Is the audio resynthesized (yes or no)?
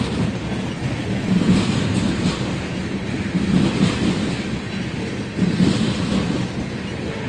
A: no